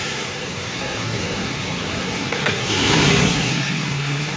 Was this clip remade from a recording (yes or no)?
yes